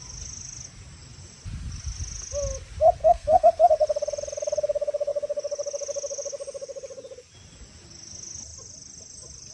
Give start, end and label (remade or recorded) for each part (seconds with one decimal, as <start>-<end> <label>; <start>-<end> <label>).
0.0-3.0 recorded; 3.0-3.7 remade; 3.7-9.5 recorded